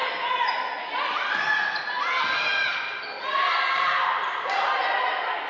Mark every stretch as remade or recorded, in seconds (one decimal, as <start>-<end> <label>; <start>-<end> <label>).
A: 0.0-5.5 recorded

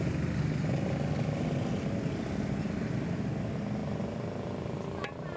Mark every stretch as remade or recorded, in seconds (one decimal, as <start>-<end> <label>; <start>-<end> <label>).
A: 0.0-5.4 recorded

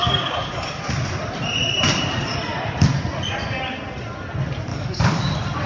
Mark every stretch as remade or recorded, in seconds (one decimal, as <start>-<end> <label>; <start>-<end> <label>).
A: 0.0-0.8 remade; 0.8-4.7 recorded; 4.7-5.3 remade; 5.3-5.7 recorded

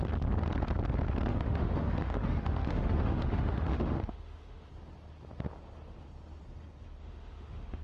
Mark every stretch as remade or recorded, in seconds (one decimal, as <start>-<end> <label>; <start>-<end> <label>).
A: 0.0-1.3 recorded; 1.3-4.7 remade; 4.7-7.0 recorded; 7.0-7.8 remade

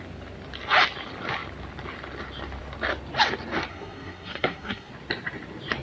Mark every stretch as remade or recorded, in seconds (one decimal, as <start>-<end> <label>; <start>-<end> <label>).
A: 0.0-3.7 recorded; 3.7-4.9 remade; 4.9-5.8 recorded

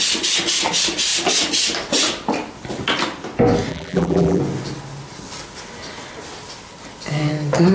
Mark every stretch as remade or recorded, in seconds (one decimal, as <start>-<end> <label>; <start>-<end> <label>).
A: 0.0-3.7 recorded; 3.7-4.4 remade; 4.4-7.7 recorded

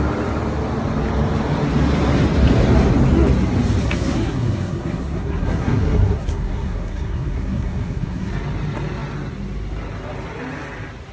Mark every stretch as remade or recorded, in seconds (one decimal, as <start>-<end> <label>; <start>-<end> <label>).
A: 0.0-3.8 recorded; 3.8-8.3 remade; 8.3-11.1 recorded

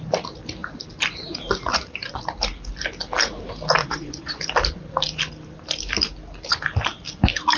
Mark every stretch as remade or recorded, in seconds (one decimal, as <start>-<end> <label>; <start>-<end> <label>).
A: 0.0-3.8 recorded; 3.8-4.4 remade; 4.4-7.6 recorded